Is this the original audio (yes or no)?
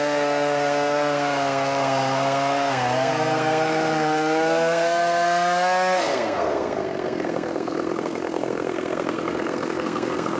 no